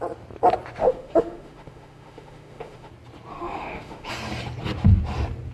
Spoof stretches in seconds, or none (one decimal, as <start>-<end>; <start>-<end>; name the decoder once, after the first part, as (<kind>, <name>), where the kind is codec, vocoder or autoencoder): 0.8-2.9 (autoencoder, DAC-VAE); 3.3-4.1